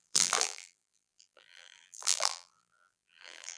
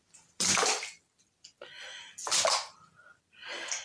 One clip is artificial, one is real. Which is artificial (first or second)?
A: first